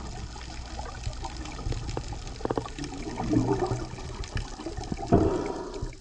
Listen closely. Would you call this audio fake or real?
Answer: real